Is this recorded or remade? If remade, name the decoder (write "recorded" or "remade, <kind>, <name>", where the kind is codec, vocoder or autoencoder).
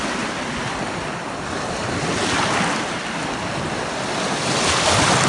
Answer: recorded